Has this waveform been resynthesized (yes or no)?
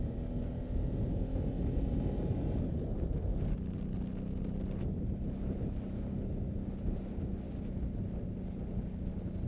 no